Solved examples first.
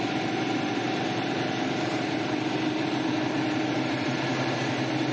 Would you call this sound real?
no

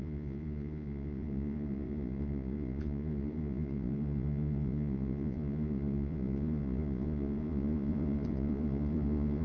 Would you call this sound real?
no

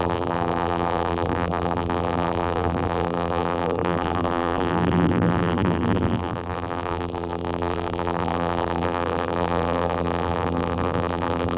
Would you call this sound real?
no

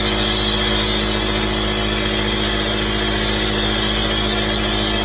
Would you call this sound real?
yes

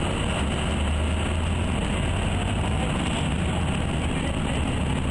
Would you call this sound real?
yes